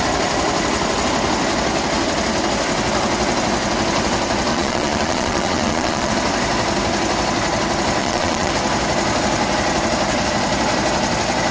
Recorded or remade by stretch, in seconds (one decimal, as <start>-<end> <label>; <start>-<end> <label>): 0.0-4.5 recorded; 4.5-6.1 remade; 6.1-8.0 recorded; 8.0-8.5 remade; 8.5-11.5 recorded